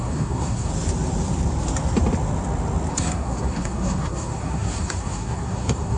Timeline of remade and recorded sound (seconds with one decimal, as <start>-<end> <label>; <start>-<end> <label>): 0.0-0.7 remade; 0.7-2.9 recorded; 2.9-6.0 remade